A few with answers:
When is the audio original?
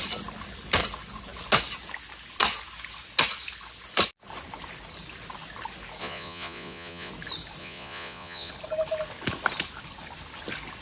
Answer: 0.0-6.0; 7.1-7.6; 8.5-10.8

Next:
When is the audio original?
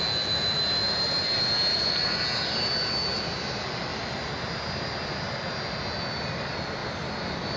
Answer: 0.0-1.7; 2.2-7.6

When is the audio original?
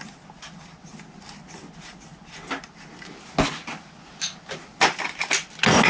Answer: 0.0-5.9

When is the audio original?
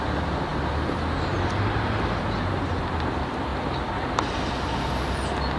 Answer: 0.0-5.6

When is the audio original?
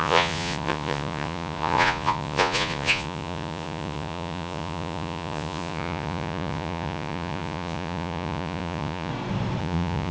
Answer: 9.1-9.6